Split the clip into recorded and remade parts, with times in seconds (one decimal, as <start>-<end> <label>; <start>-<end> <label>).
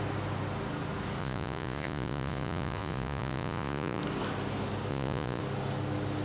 0.0-1.2 recorded; 1.2-4.0 remade; 4.0-4.9 recorded; 4.9-5.4 remade; 5.4-6.2 recorded